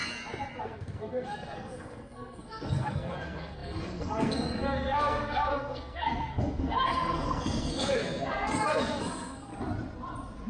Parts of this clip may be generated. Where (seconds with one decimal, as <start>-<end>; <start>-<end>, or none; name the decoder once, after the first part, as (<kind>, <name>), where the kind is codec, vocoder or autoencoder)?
0.6-9.5 (codec, SNAC)